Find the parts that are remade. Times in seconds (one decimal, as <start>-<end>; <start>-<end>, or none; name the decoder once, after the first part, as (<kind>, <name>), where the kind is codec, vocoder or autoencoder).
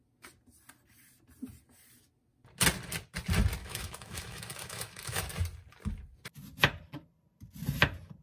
3.6-5.2 (autoencoder, DAC-VAE)